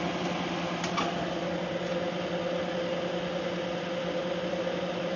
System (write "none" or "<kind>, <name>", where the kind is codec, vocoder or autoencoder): none